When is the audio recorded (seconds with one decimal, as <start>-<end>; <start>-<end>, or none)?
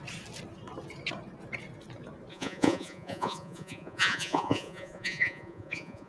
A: 0.0-2.3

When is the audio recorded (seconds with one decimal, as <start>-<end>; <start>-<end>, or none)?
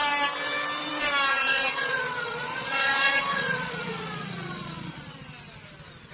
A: 0.0-1.3; 5.0-6.1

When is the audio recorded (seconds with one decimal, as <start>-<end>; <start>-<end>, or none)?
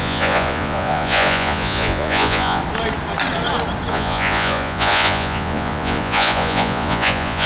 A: 2.6-3.9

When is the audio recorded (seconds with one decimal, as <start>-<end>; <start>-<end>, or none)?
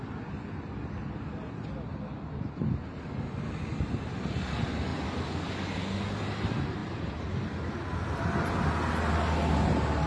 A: 0.0-10.1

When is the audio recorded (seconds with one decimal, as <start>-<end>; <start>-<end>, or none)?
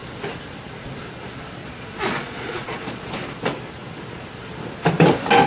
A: 0.0-1.6; 3.1-5.5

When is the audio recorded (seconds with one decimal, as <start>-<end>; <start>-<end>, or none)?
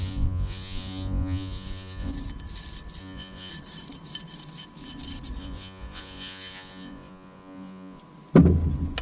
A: 2.1-3.0; 3.5-5.4; 8.0-9.0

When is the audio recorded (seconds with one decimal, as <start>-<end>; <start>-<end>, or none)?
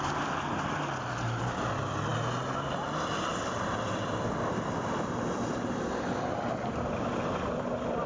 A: 0.0-8.1